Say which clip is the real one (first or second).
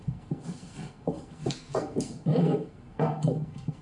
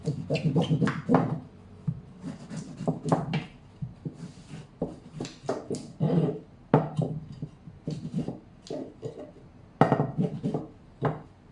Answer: second